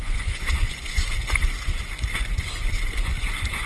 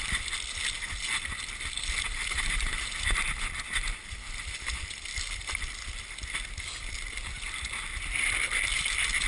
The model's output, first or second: first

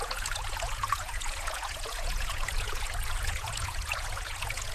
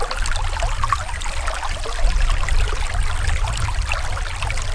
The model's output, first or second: first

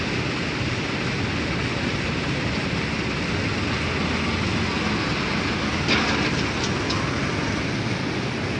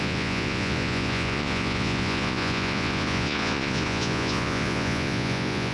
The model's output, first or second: second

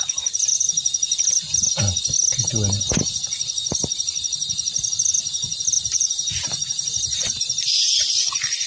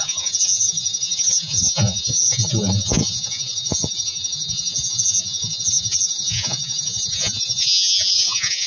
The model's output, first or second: second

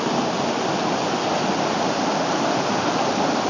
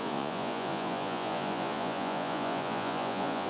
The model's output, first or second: second